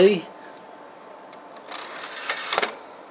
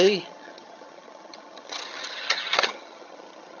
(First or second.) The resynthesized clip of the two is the second